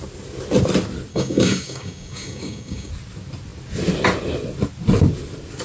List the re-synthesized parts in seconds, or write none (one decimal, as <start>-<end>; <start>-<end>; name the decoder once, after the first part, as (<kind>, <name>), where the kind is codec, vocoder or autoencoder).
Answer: 1.1-2.9 (codec, DAC)

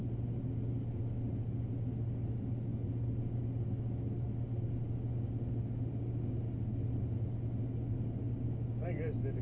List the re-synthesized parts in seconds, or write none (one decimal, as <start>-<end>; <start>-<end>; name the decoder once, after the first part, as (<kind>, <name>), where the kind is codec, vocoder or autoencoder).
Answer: none

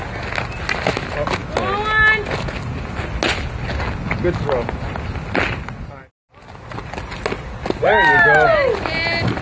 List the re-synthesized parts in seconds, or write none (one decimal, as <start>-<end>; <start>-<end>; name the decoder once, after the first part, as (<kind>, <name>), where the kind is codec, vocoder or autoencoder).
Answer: none

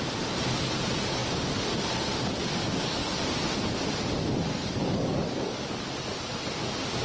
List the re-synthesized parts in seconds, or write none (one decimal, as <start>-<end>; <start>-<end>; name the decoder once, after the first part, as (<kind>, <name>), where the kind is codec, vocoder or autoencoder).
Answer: 2.6-3.2 (codec, DAC); 4.6-5.6

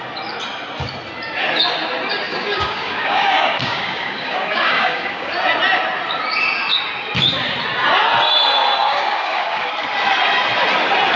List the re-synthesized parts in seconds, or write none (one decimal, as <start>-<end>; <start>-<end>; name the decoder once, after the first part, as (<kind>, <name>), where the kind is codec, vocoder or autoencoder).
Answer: 2.3-5.3 (codec, DAC); 8.8-9.7

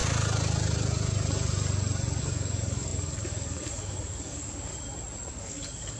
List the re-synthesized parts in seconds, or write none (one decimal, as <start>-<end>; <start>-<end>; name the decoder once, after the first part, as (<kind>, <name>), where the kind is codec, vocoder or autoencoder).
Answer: 2.2-4.7 (codec, DAC); 5.3-6.0

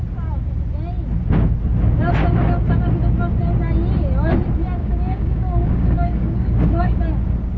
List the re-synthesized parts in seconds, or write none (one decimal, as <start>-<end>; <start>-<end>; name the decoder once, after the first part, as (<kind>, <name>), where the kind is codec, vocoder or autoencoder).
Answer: 4.8-7.0 (codec, DAC)

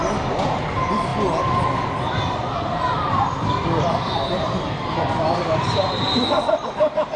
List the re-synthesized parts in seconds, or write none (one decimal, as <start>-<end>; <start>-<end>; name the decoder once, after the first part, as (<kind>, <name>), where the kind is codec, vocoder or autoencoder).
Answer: none